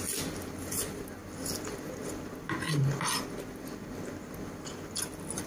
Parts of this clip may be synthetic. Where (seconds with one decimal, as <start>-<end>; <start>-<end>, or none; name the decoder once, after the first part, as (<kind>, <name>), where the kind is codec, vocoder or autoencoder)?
none